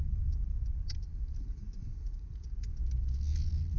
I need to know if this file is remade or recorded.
recorded